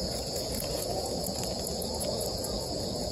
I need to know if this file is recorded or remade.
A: remade